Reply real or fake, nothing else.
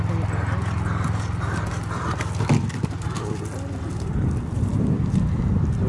real